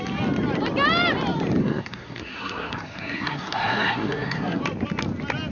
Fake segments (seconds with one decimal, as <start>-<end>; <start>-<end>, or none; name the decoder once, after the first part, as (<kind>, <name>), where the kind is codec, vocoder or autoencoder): 1.6-4.6 (codec, SNAC)